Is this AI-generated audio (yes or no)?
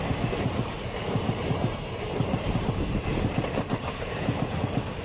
yes